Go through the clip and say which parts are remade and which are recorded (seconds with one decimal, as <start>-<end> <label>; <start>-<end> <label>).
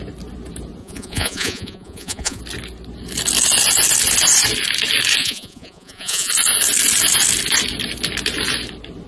0.0-0.8 recorded; 0.8-2.4 remade; 2.4-5.2 recorded; 5.2-6.3 remade; 6.3-9.1 recorded